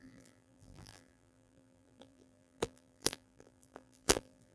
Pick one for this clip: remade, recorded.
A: remade